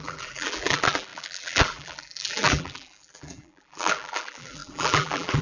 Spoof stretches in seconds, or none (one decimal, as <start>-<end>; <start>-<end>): 0.0-5.4